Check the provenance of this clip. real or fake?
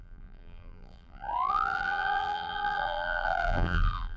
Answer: fake